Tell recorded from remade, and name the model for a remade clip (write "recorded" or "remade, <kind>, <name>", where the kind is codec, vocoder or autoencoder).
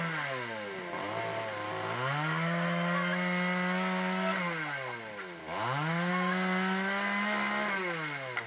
recorded